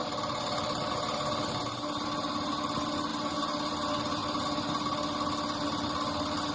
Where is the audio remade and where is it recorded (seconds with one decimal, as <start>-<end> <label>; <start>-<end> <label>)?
0.0-6.5 recorded